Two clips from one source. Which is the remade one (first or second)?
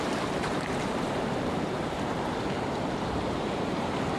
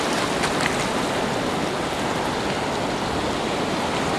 first